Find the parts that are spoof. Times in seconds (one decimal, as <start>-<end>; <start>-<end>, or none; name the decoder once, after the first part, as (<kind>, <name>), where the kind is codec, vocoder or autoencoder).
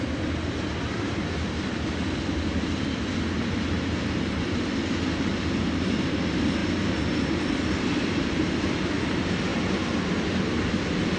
none